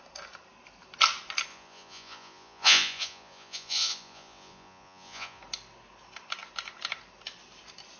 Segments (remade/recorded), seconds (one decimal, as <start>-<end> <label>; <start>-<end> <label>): 0.0-1.5 recorded; 1.5-5.4 remade; 5.4-8.0 recorded